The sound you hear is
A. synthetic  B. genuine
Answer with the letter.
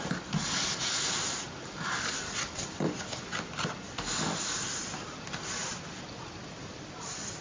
B